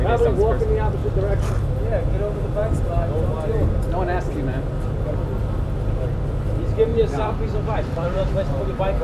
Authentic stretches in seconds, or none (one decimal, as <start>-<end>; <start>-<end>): 0.0-6.9; 8.2-9.0